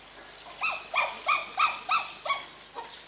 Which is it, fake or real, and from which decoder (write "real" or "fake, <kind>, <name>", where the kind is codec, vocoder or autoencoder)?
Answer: real